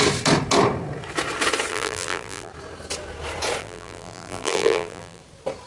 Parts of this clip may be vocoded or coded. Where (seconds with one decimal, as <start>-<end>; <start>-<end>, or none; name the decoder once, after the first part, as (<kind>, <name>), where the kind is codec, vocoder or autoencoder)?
1.7-2.5 (vocoder, BigVGAN v2); 3.6-5.2